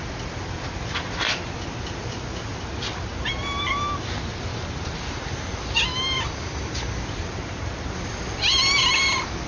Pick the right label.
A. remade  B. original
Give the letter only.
B